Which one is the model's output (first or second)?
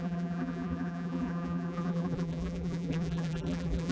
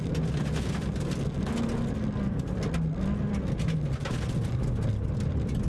first